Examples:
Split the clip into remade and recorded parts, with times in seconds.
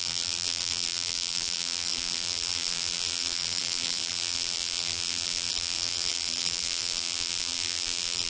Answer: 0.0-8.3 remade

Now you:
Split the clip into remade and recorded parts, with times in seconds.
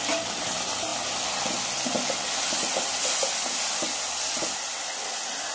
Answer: 0.0-5.5 recorded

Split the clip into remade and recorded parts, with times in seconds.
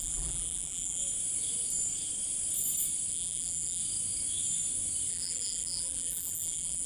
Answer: 0.0-1.0 remade; 1.0-3.1 recorded; 3.1-3.8 remade; 3.8-5.1 recorded; 5.1-6.9 remade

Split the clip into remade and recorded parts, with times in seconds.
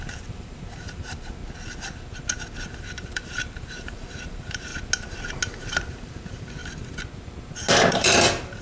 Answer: 0.0-1.4 remade; 1.4-2.8 recorded; 2.8-4.7 remade; 4.7-5.6 recorded; 5.6-6.6 remade; 6.6-7.9 recorded; 7.9-8.6 remade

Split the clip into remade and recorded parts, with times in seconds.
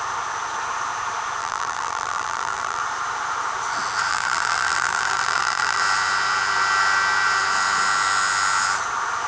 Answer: 0.0-1.4 recorded; 1.4-2.8 remade; 2.8-4.1 recorded; 4.1-5.8 remade; 5.8-9.3 recorded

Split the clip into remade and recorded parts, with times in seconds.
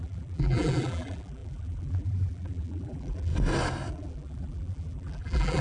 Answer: 0.0-3.3 remade; 3.3-3.9 recorded; 3.9-5.6 remade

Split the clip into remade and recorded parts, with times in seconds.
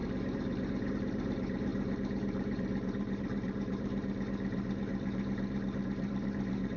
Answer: 0.0-6.8 remade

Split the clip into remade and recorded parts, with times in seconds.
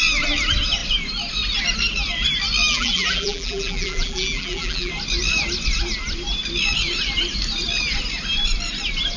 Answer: 0.0-2.7 recorded; 2.7-4.9 remade; 4.9-9.2 recorded